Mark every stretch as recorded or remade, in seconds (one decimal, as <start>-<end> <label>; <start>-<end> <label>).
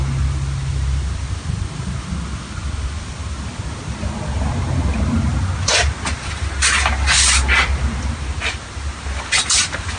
0.0-10.0 recorded